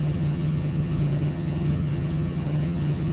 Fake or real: fake